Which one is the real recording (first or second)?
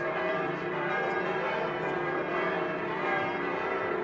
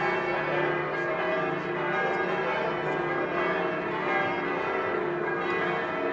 second